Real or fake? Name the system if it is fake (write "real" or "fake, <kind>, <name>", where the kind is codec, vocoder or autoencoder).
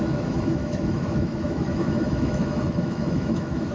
fake, autoencoder, DAC-VAE